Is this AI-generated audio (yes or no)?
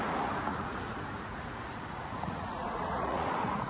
yes